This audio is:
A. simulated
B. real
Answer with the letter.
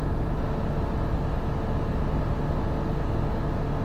B